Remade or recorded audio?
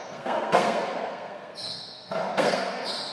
remade